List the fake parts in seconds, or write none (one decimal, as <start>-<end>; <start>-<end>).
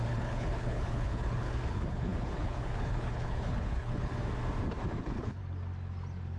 0.0-4.1; 4.9-5.4